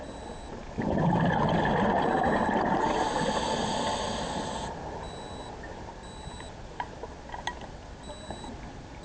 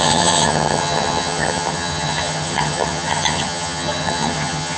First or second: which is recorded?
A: first